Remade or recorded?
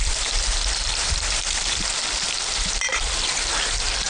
recorded